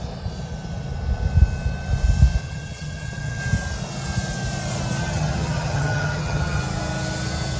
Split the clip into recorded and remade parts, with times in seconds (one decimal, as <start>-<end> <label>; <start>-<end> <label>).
0.0-2.4 recorded; 2.4-3.4 remade; 3.4-5.0 recorded; 5.0-6.6 remade; 6.6-7.6 recorded